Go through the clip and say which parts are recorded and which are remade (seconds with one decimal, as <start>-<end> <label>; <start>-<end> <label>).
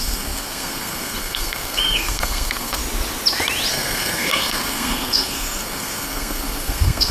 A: 0.0-2.8 remade; 2.8-3.7 recorded; 3.7-7.1 remade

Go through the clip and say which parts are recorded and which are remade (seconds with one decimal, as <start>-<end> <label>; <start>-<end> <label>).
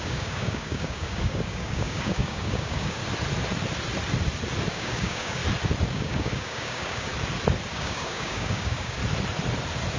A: 0.0-3.0 remade; 3.0-4.7 recorded; 4.7-5.4 remade; 5.4-5.9 recorded; 5.9-7.1 remade; 7.1-7.7 recorded; 7.7-9.0 remade; 9.0-10.0 recorded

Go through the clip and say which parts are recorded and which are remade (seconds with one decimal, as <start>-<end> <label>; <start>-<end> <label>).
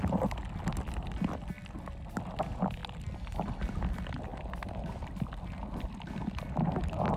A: 0.0-4.3 recorded; 4.3-5.4 remade; 5.4-7.2 recorded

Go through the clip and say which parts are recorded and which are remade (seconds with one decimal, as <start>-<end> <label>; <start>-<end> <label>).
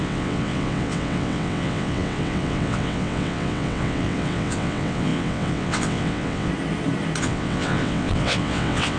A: 0.0-6.5 remade; 6.5-7.2 recorded; 7.2-9.0 remade